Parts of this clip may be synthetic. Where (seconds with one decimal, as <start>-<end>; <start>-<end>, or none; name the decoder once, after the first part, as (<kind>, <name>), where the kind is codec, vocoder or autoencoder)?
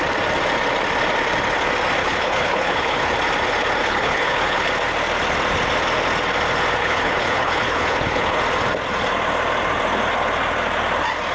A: 2.0-3.1 (codec, HILCodec); 3.8-4.7; 6.8-8.4